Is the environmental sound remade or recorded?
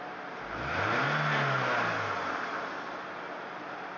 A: recorded